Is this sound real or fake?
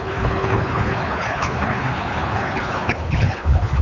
fake